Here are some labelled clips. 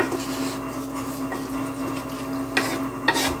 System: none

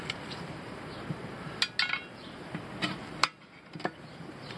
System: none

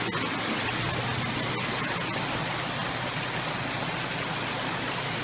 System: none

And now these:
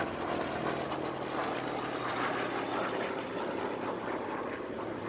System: none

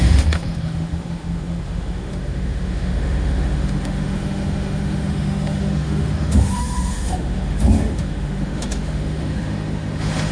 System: autoencoder, DAC-VAE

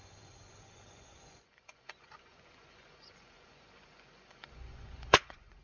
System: vocoder, Vocos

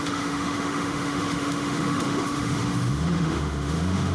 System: autoencoder, DAC-VAE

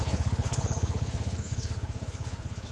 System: codec, HILCodec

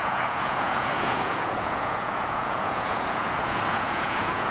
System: vocoder, Vocos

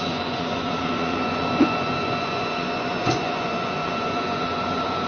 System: vocoder, Vocos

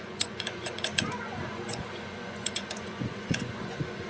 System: vocoder, Vocos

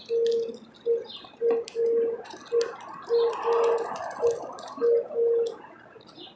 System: none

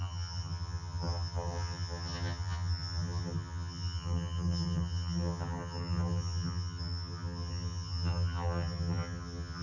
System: vocoder, HiFi-GAN